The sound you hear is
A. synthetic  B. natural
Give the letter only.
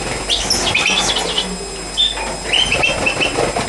B